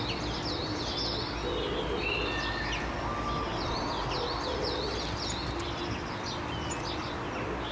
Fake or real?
real